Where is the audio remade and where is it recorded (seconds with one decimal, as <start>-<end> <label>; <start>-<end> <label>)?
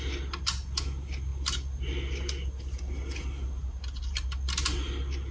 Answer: 0.0-5.3 recorded